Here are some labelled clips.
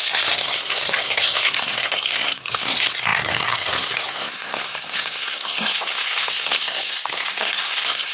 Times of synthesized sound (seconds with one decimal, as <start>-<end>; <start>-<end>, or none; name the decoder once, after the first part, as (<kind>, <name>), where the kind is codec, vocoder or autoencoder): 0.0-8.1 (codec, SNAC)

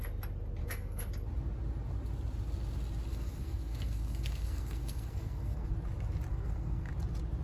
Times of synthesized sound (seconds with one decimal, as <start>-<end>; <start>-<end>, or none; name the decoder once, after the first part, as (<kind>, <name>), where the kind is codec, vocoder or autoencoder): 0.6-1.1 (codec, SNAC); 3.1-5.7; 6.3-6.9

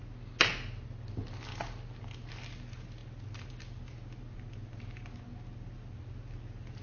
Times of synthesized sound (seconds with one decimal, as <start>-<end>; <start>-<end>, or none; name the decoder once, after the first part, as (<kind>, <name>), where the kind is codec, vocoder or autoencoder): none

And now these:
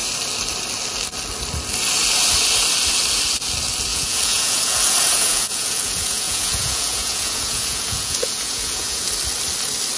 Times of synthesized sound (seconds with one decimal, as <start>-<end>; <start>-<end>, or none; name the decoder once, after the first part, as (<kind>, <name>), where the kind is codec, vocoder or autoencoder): 3.9-9.1 (vocoder, Vocos)